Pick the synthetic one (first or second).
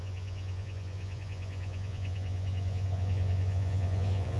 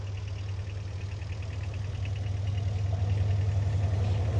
first